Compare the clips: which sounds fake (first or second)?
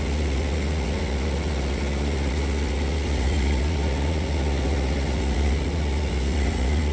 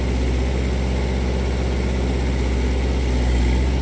first